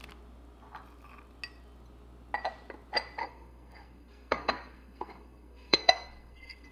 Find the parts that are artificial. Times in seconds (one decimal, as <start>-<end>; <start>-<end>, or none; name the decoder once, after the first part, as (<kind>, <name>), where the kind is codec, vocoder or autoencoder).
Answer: 3.2-6.7 (codec, SNAC)